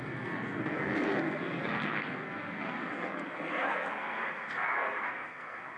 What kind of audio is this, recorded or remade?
remade